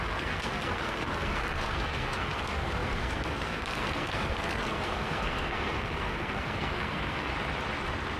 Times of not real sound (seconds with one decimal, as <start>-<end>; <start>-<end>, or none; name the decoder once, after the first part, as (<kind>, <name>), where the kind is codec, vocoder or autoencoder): 0.0-7.3 (codec, SNAC)

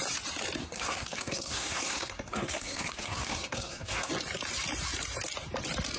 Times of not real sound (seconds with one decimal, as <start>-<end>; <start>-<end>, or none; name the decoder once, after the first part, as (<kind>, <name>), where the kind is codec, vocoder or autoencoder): 0.6-4.1 (codec, SNAC)

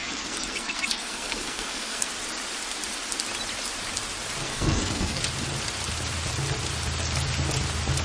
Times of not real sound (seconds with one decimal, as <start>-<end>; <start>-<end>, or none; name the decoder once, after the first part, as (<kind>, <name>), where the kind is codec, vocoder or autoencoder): 0.0-2.1 (codec, SNAC); 4.4-5.2